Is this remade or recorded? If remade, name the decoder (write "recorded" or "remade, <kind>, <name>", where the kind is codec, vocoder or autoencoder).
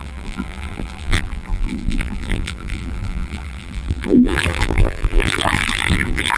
remade, vocoder, BigVGAN v2